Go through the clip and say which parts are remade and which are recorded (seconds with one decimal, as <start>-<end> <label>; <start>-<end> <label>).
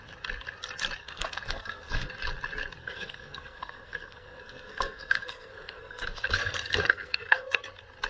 0.0-1.0 recorded; 1.0-2.1 remade; 2.1-2.8 recorded; 2.8-7.6 remade; 7.6-8.1 recorded